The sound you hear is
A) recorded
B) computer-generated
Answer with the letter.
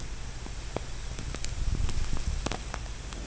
A